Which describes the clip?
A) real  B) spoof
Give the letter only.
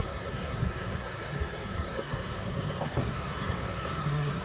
B